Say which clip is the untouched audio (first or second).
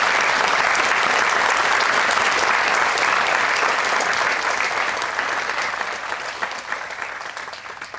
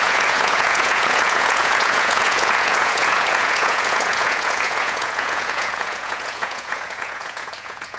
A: first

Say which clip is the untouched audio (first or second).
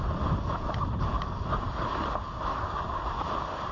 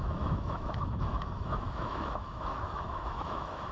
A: first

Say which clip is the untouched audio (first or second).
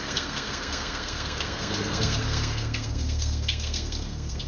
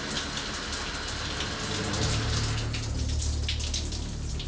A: second